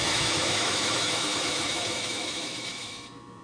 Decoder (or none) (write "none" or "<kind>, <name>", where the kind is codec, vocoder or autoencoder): autoencoder, DAC-VAE